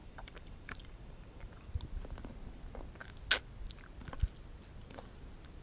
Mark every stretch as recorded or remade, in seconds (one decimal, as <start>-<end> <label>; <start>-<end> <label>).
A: 0.0-1.7 remade; 1.7-5.6 recorded